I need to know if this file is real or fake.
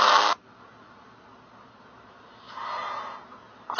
real